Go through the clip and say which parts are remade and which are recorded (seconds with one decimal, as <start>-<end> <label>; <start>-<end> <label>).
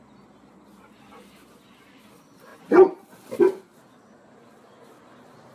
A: 0.0-5.5 recorded